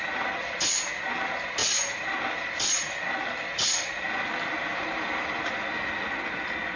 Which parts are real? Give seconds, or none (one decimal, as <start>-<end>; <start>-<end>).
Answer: 0.0-6.8